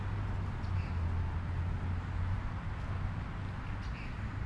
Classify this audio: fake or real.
real